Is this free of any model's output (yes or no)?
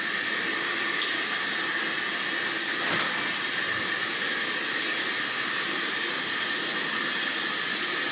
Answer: yes